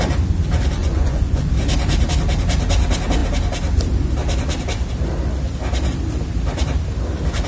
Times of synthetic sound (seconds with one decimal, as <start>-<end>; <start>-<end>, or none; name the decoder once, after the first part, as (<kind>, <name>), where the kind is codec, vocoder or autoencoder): 0.8-1.5 (vocoder, Vocos)